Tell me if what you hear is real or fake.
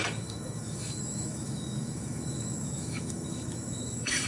fake